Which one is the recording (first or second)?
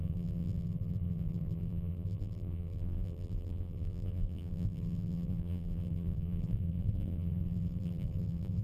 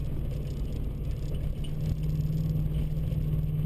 second